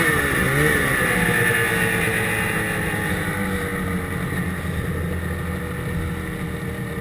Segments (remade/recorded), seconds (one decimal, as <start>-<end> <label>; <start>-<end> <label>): 0.0-7.0 recorded